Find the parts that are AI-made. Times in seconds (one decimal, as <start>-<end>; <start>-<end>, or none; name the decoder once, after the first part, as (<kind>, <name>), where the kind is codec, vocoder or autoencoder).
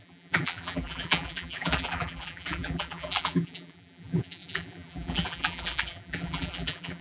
0.0-7.0 (vocoder, BigVGAN v2)